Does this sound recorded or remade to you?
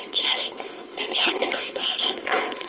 remade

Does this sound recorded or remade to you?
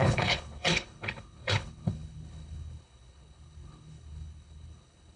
remade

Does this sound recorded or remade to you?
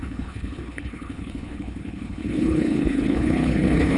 remade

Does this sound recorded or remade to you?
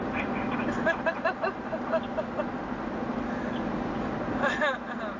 recorded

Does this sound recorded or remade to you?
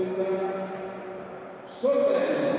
recorded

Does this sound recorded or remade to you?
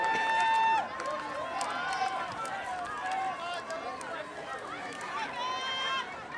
recorded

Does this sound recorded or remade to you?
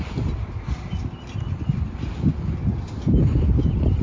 recorded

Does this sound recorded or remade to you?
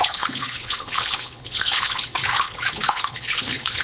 remade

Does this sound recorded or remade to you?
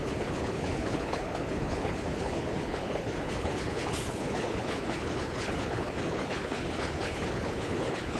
remade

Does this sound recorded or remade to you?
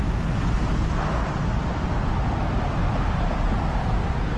recorded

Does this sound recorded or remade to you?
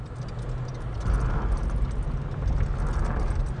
recorded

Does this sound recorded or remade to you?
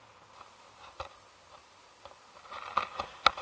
recorded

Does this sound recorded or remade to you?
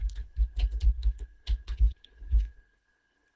remade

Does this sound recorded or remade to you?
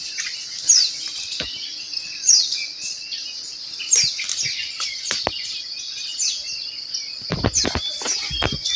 recorded